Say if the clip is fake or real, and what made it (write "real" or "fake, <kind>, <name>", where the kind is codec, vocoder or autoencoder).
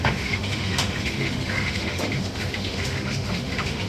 fake, autoencoder, DAC-VAE